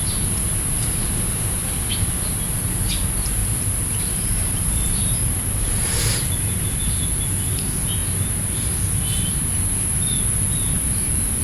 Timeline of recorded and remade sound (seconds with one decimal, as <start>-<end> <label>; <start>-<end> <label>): 0.0-3.4 recorded; 3.4-6.8 remade; 6.8-11.4 recorded